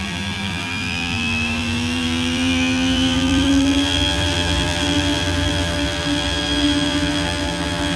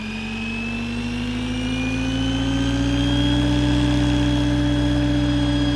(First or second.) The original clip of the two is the second